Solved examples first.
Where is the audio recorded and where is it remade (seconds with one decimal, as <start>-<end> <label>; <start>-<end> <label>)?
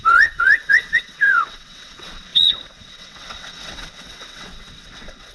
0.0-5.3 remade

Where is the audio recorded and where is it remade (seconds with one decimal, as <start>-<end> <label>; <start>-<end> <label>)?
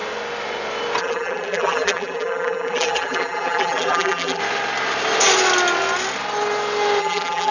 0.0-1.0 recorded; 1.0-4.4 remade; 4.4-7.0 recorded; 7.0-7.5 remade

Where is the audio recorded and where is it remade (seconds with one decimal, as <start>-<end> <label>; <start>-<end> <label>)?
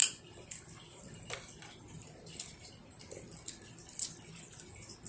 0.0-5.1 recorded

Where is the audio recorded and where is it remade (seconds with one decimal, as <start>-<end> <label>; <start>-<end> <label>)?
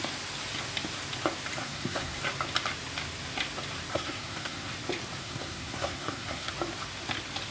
0.0-1.6 recorded; 1.6-2.2 remade; 2.2-3.9 recorded; 3.9-4.7 remade; 4.7-5.2 recorded; 5.2-6.5 remade; 6.5-7.5 recorded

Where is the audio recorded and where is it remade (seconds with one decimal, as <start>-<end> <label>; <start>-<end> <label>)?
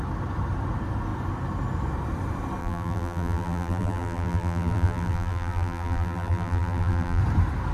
0.0-2.6 recorded; 2.6-7.2 remade; 7.2-7.7 recorded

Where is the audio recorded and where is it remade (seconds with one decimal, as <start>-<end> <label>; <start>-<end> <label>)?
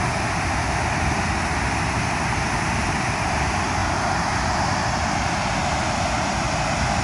0.0-7.0 recorded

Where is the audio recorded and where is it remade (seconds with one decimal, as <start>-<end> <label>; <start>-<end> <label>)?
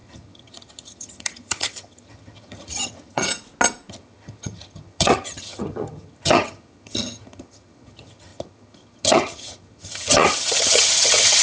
0.0-3.3 remade; 3.3-3.9 recorded; 3.9-11.4 remade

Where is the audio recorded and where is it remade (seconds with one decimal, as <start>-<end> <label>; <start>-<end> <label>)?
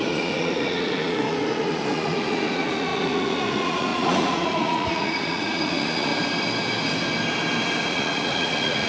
0.0-6.1 remade; 6.1-7.9 recorded; 7.9-8.9 remade